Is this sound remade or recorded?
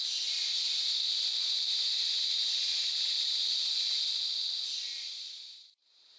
recorded